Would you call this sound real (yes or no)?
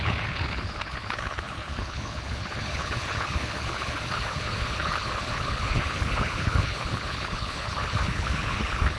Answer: no